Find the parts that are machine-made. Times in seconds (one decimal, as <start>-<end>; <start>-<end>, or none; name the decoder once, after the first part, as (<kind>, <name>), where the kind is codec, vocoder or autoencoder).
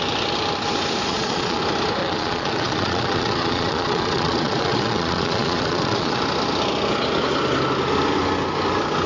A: 1.1-1.6 (vocoder, Vocos); 2.0-6.2